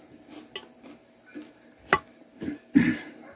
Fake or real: real